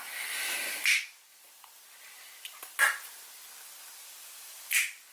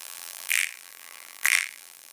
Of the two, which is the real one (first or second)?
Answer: first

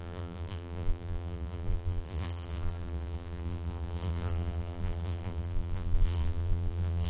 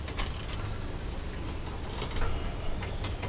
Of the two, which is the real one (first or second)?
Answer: second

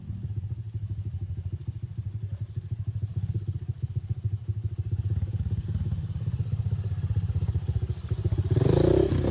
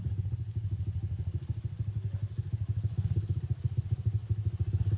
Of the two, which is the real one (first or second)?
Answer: second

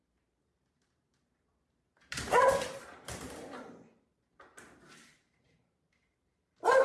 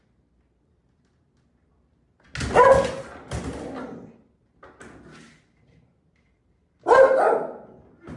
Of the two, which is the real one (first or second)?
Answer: second